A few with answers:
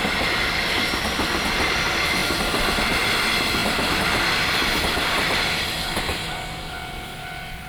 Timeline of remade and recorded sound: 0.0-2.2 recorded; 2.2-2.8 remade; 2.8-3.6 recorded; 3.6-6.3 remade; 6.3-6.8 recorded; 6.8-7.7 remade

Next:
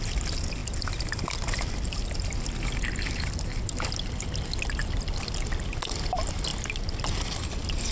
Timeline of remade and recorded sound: 0.0-0.6 remade; 0.6-3.2 recorded; 3.2-6.5 remade; 6.5-7.0 recorded; 7.0-7.9 remade

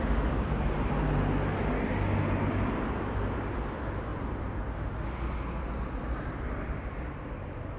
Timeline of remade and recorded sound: 0.0-7.8 recorded

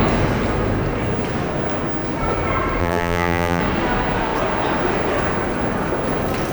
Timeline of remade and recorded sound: 0.0-2.8 recorded; 2.8-3.6 remade; 3.6-6.5 recorded